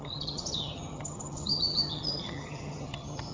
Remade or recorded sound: remade